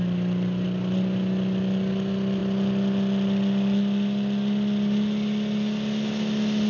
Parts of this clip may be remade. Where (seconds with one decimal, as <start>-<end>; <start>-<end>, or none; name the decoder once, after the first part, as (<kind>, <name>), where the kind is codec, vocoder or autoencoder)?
none